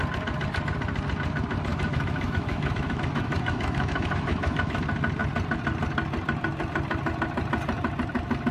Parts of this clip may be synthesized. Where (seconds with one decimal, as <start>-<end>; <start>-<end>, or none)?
1.7-4.8